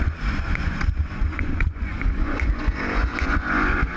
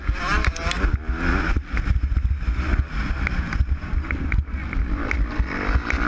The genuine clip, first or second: second